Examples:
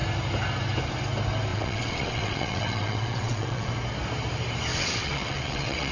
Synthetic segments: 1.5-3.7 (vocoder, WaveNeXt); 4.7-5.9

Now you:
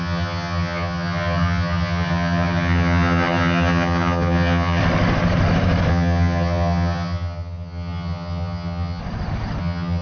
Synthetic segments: 0.0-4.8 (vocoder, HiFi-GAN); 5.9-9.0; 9.6-10.0

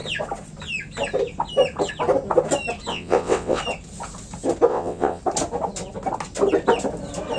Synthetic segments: 2.9-3.6 (vocoder, WaveNeXt); 4.7-5.2

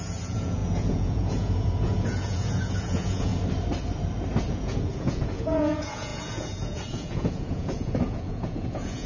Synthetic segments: 0.0-3.3 (vocoder, Vocos); 4.5-9.1

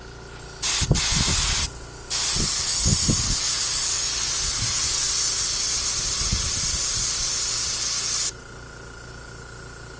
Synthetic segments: none

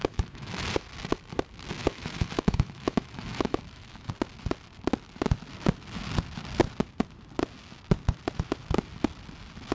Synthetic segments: 0.0-0.7 (autoencoder, DAC-VAE); 1.8-4.1

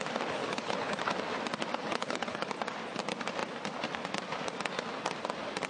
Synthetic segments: 0.4-1.0 (codec, HILCodec); 1.7-2.5

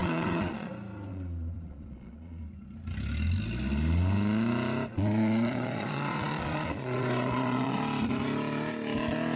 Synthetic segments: 0.0-0.7 (vocoder, Vocos); 1.1-2.4; 4.9-7.8